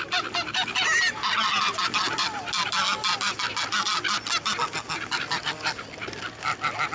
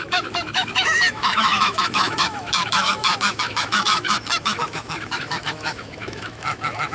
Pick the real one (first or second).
first